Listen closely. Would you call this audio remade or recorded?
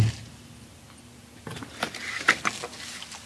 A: recorded